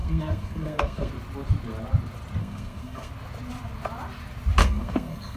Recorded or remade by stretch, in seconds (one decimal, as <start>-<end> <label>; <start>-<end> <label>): 0.0-1.1 remade; 1.1-2.4 recorded; 2.4-3.1 remade; 3.1-4.6 recorded; 4.6-5.4 remade